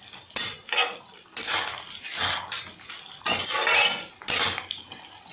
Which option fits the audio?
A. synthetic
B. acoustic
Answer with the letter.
B